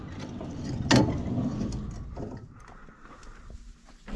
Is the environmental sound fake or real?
real